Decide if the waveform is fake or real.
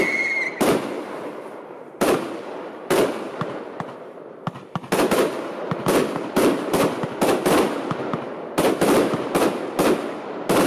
real